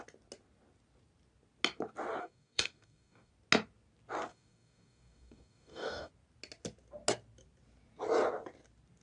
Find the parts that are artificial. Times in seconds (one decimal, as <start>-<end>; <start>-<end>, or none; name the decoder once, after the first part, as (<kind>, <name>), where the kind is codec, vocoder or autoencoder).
2.2-3.3 (codec, DAC); 4.3-6.1